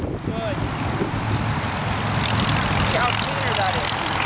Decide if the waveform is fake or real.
real